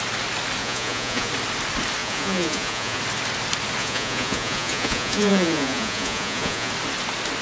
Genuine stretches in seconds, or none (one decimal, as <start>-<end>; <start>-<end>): 0.0-0.6; 1.3-2.0; 3.0-3.8; 6.7-7.4